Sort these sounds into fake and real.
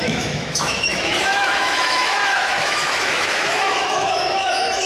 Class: fake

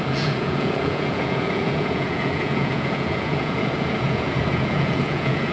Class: fake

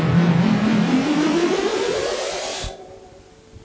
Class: real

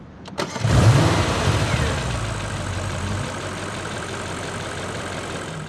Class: fake